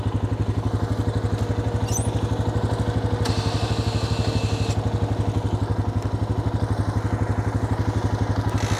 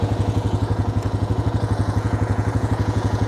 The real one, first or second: first